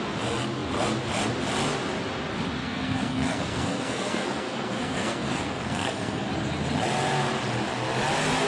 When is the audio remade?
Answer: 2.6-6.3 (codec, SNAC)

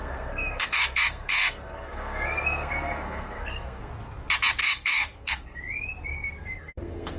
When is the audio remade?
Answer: 0.0-3.9 (codec, SNAC); 4.6-5.6; 6.1-7.2

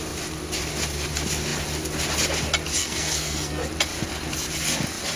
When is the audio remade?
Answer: 2.8-3.6 (codec, SNAC)

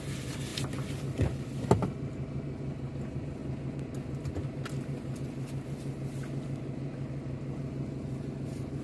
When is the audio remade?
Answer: none

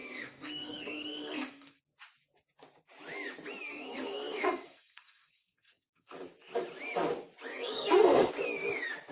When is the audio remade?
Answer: 0.0-1.8 (codec, SNAC); 3.7-6.1; 7.5-8.3

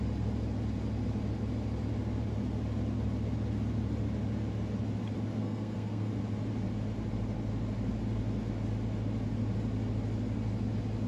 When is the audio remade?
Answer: 5.4-6.1 (codec, SNAC)

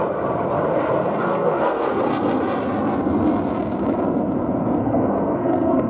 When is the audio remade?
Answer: 1.0-2.0 (codec, SNAC); 4.8-5.9